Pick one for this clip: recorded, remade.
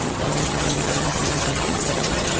remade